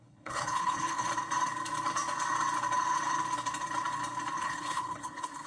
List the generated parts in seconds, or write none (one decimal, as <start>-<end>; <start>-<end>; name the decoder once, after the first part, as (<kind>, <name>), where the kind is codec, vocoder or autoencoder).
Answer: 0.0-1.1 (codec, HILCodec); 4.4-5.5